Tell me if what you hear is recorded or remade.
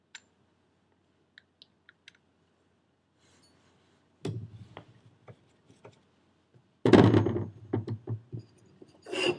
recorded